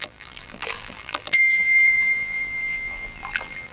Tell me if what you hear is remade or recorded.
remade